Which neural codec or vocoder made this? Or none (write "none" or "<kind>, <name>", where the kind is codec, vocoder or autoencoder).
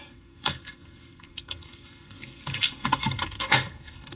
codec, SNAC